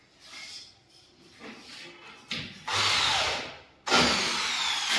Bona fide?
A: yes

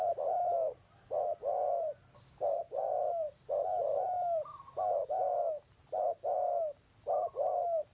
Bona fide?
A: yes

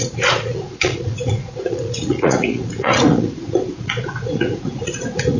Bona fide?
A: no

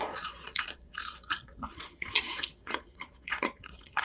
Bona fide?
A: no